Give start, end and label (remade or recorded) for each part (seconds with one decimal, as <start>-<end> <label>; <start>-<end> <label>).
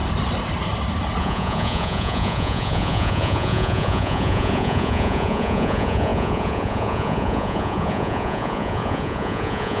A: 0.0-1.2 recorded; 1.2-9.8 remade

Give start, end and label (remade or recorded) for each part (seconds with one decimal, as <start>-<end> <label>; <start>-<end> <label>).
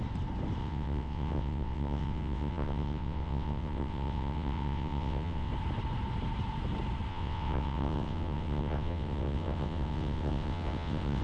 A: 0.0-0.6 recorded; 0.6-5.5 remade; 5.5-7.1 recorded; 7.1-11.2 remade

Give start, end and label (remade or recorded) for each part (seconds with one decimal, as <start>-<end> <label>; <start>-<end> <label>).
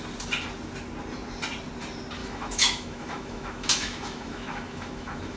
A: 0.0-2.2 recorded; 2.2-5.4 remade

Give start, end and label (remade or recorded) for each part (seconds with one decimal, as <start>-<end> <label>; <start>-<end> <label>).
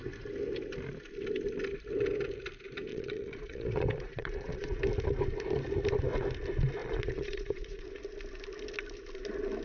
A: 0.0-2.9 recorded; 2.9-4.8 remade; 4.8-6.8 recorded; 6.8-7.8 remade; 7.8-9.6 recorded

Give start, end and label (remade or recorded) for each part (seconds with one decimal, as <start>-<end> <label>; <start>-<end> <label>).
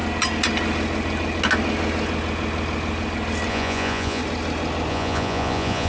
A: 0.0-3.5 recorded; 3.5-4.2 remade; 4.2-4.9 recorded; 4.9-5.9 remade